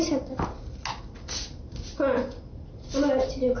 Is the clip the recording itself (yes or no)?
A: yes